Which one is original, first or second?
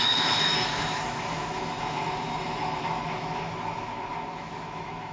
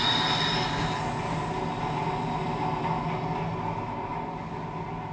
second